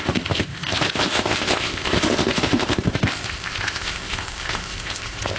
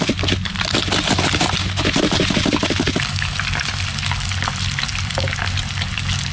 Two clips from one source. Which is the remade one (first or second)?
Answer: first